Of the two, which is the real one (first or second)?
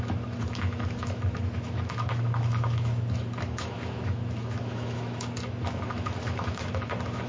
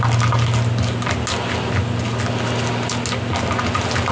second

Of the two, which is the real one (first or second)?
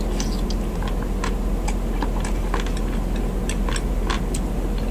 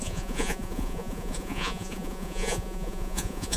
first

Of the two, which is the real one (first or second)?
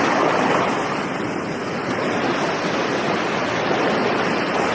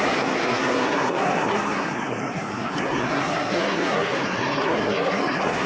first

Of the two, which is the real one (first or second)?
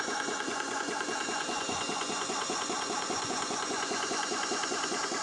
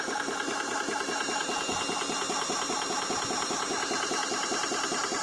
second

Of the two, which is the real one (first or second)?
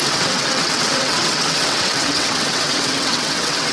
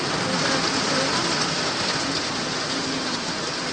second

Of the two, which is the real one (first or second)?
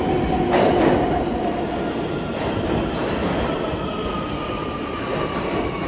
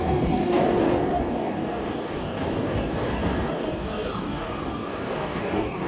first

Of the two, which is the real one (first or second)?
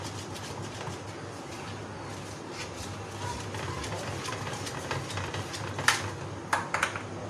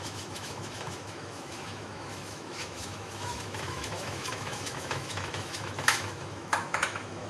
first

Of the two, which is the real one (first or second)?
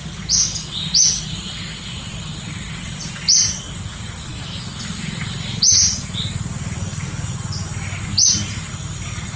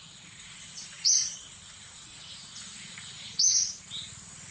first